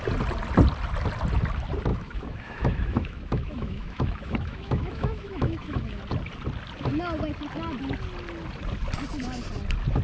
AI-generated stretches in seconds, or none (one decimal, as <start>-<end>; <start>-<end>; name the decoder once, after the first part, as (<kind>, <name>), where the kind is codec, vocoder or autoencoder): 1.9-6.0 (autoencoder, DAC-VAE)